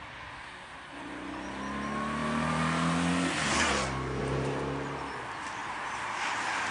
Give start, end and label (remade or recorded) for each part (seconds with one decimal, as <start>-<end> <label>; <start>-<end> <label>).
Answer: 0.0-6.7 recorded